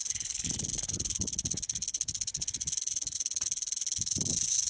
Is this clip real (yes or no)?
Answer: yes